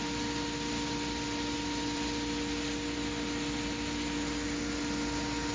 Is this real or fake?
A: real